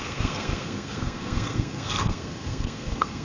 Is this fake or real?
fake